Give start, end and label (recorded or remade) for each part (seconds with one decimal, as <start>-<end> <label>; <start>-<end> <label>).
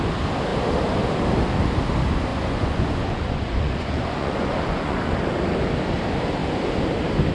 0.0-2.3 recorded; 2.3-5.1 remade; 5.1-7.3 recorded